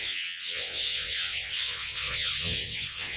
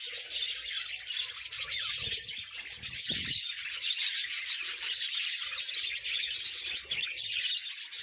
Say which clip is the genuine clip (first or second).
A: second